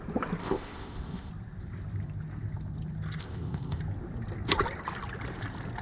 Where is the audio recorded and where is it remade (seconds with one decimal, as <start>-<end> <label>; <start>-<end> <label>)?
0.0-0.4 recorded; 0.4-1.3 remade; 1.3-3.2 recorded; 3.2-3.8 remade; 3.8-5.8 recorded